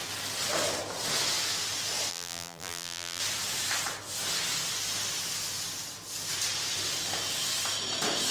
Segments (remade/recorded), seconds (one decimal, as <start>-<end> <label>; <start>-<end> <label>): 0.0-2.1 recorded; 2.1-3.2 remade; 3.2-8.3 recorded